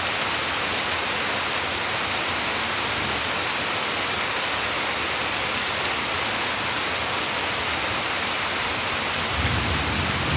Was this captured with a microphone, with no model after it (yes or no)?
yes